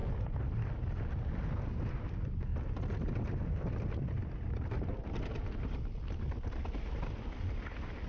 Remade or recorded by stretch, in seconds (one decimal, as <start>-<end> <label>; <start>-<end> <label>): 0.0-1.9 recorded; 1.9-8.1 remade